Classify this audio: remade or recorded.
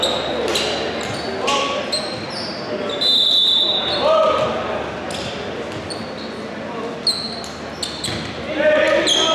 recorded